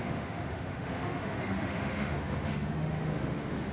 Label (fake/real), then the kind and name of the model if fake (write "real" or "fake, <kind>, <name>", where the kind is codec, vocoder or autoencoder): fake, autoencoder, DAC-VAE